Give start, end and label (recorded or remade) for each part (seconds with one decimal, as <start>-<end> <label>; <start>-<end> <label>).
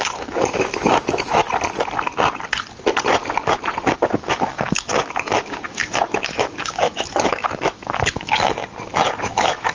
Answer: 0.0-1.4 remade; 1.4-4.0 recorded; 4.0-8.6 remade; 8.6-9.2 recorded; 9.2-9.7 remade